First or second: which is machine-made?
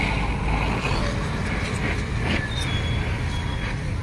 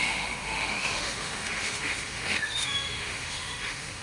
second